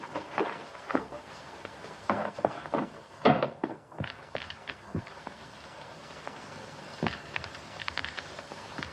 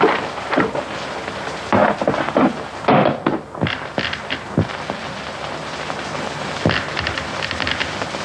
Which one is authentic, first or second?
second